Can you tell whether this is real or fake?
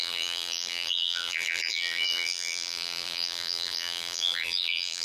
fake